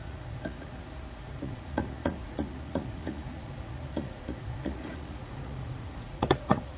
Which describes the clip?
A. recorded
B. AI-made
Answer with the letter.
B